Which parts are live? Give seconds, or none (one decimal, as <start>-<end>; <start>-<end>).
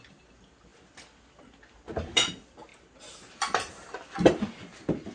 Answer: 0.0-5.1